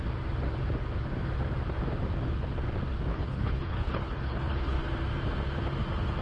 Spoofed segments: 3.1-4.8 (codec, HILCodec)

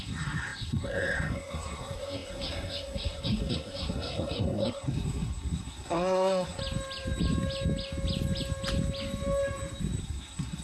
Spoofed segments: 0.0-6.6 (codec, SNAC); 10.0-10.6